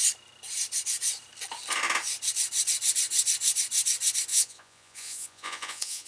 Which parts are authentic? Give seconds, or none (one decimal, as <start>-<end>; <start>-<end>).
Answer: 0.0-4.3